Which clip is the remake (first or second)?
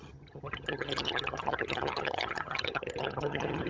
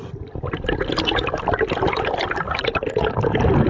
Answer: first